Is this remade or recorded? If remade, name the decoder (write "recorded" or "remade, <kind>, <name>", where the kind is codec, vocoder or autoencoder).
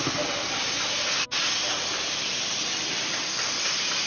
recorded